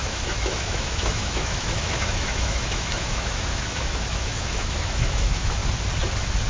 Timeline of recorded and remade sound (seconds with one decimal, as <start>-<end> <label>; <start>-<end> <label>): 0.0-5.6 remade; 5.6-6.5 recorded